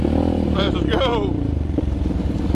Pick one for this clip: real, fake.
fake